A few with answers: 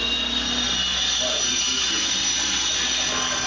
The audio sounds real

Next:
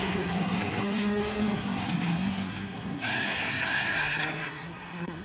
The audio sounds fake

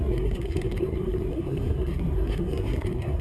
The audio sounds fake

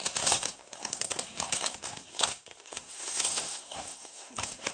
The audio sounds fake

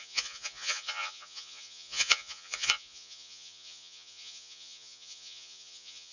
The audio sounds fake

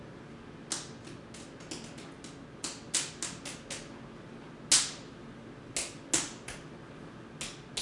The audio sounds real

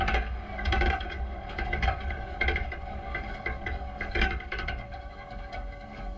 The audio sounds fake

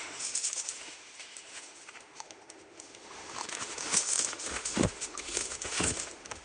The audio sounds fake